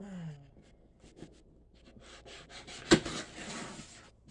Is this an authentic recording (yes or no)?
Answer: yes